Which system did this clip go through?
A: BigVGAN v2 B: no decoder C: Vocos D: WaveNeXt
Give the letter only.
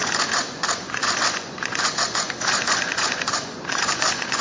C